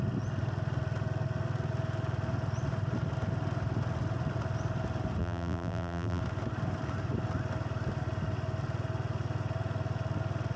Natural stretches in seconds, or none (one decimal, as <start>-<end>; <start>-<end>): 0.0-5.2; 6.2-10.6